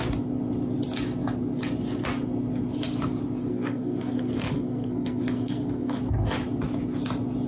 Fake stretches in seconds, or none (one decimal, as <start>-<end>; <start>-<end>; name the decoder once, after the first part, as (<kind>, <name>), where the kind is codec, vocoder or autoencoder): 3.4-6.0 (codec, SNAC)